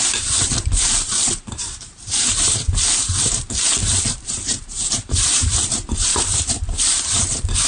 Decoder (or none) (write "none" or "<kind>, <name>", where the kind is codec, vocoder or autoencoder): vocoder, BigVGAN v2